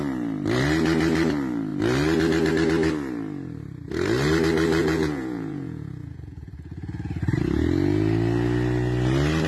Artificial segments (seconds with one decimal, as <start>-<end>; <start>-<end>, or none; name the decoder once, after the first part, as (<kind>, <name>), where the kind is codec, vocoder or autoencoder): 4.8-6.5 (vocoder, Vocos)